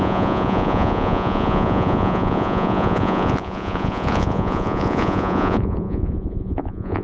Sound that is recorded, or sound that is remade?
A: remade